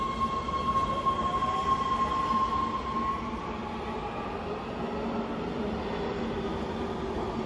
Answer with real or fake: real